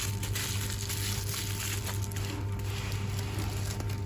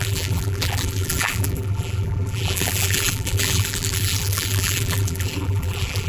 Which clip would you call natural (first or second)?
first